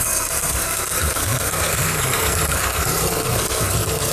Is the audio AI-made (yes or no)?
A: yes